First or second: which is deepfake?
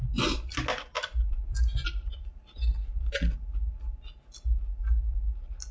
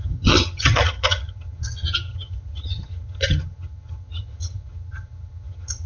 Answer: second